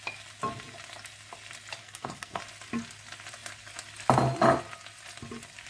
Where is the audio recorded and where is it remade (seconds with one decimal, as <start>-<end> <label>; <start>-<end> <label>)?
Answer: 0.0-1.8 recorded; 1.8-2.4 remade; 2.4-5.7 recorded